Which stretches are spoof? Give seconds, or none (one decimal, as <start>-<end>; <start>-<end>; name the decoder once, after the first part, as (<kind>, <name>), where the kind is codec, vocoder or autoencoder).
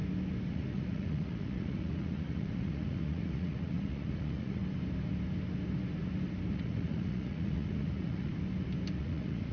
0.5-4.6 (vocoder, Vocos); 6.5-8.3; 9.0-9.5